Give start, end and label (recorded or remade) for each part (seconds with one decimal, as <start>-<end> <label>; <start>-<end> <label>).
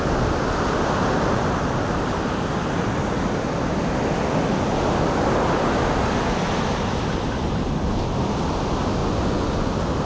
0.0-9.0 recorded; 9.0-9.7 remade; 9.7-10.1 recorded